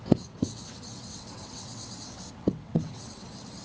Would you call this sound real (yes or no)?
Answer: no